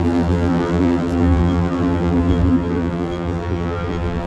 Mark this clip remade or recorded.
remade